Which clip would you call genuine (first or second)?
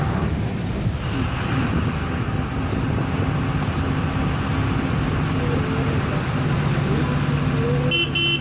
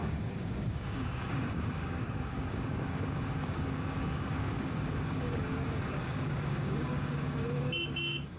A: first